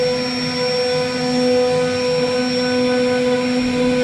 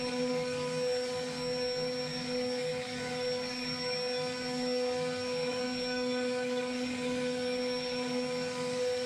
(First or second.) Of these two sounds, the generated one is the second